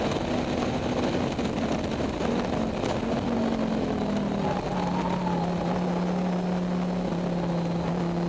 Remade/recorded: recorded